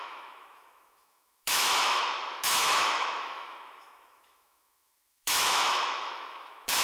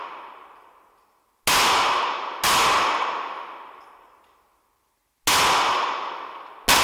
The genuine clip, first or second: second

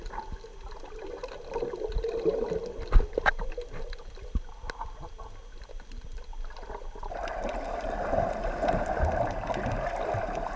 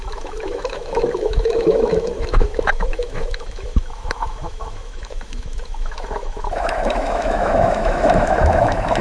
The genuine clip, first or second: first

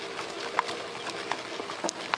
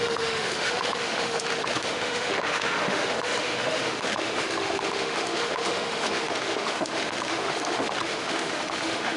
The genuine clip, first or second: first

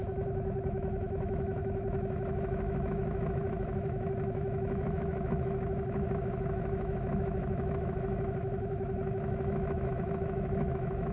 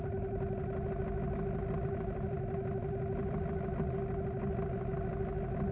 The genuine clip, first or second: second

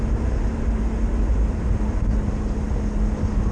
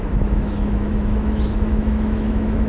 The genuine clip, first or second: first